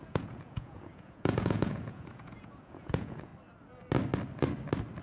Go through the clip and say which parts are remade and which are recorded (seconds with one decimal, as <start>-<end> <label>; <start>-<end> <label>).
0.0-3.3 remade; 3.3-5.0 recorded

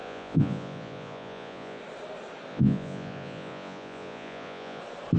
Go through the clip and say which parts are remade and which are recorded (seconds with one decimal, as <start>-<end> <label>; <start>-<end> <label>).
0.0-1.8 remade; 1.8-2.5 recorded; 2.5-4.8 remade; 4.8-5.2 recorded